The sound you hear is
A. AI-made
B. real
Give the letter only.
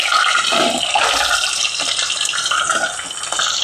B